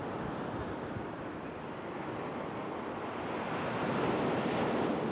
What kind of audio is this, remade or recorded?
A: recorded